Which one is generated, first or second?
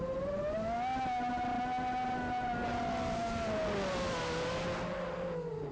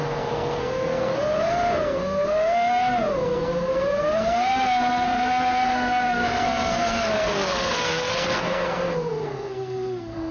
second